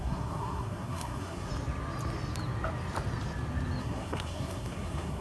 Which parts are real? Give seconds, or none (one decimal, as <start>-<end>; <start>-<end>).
1.5-3.8